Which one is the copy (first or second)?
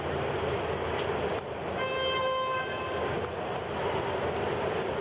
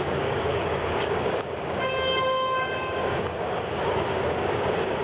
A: second